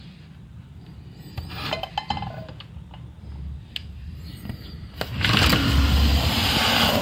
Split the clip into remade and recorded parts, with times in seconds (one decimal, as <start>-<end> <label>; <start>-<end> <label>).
0.0-0.5 recorded; 0.5-1.6 remade; 1.6-3.8 recorded; 3.8-5.5 remade; 5.5-6.1 recorded; 6.1-6.6 remade; 6.6-7.0 recorded